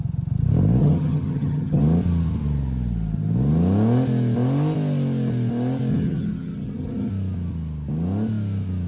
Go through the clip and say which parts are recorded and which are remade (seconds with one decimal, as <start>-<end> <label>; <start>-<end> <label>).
0.0-0.8 recorded; 0.8-1.8 remade; 1.8-5.9 recorded; 5.9-7.1 remade; 7.1-8.9 recorded